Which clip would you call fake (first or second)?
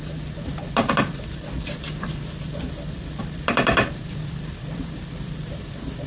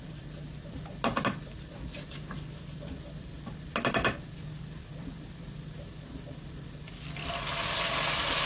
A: first